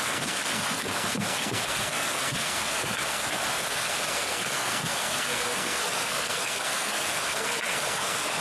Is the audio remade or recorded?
remade